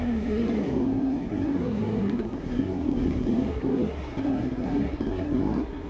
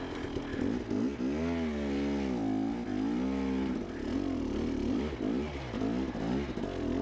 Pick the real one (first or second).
second